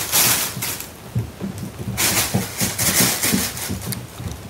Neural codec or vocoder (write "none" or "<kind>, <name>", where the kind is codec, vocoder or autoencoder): none